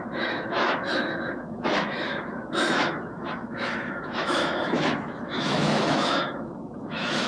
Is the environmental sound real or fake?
fake